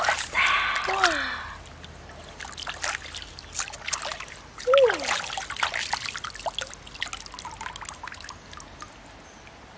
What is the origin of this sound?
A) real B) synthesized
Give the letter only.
A